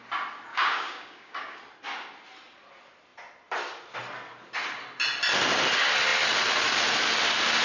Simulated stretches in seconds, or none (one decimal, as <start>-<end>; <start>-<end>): 0.5-1.6